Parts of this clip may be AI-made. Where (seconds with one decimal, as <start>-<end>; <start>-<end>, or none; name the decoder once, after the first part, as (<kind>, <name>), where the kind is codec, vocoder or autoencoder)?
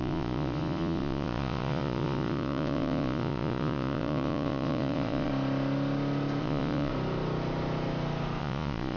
0.0-5.3 (vocoder, Vocos); 6.4-6.9; 8.4-9.0